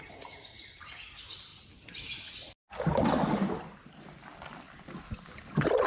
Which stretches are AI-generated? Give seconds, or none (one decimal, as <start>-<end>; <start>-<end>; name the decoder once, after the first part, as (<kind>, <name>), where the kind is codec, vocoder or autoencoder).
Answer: none